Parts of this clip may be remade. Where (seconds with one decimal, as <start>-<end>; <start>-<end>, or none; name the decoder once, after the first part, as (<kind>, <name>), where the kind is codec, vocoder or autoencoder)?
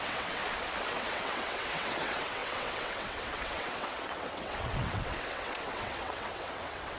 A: 0.0-0.4 (vocoder, WaveNeXt); 0.9-7.0